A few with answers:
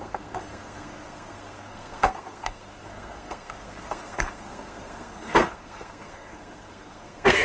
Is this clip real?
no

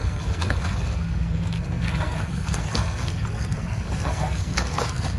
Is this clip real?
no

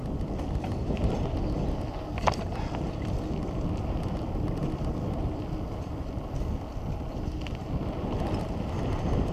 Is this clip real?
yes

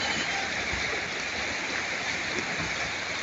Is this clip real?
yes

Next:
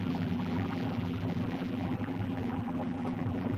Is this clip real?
no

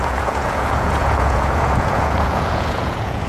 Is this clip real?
no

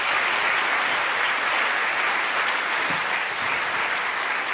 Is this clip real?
yes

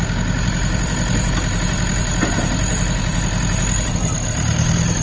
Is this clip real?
no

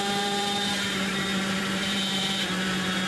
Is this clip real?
no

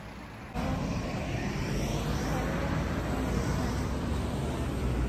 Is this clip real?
yes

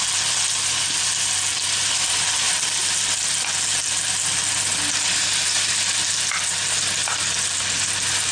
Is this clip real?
yes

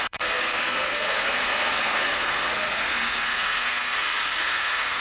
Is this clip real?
no